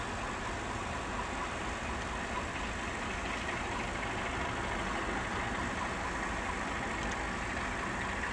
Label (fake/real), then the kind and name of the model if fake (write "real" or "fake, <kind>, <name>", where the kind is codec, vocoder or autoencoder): real